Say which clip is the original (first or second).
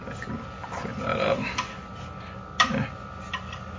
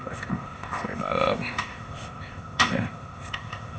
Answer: first